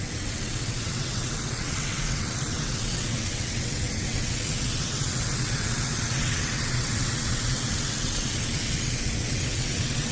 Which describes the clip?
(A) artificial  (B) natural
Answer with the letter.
A